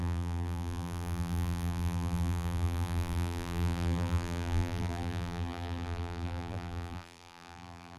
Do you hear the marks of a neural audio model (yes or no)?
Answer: yes